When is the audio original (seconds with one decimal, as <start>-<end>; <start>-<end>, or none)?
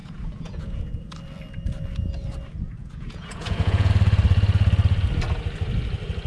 0.8-2.8; 3.9-6.3